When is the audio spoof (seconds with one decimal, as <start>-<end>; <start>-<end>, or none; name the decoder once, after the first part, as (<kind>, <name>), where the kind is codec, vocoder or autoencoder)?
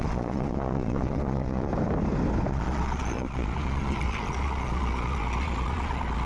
0.0-1.7 (vocoder, Vocos); 2.5-6.3